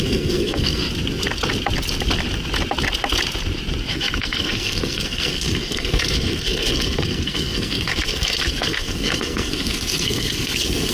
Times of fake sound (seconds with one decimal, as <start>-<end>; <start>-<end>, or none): 0.0-0.8; 3.9-10.9